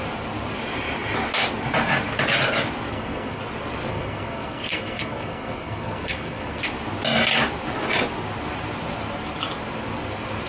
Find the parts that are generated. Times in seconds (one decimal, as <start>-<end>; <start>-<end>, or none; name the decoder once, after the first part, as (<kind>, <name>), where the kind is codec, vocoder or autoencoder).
2.9-3.4 (codec, SNAC); 3.9-6.6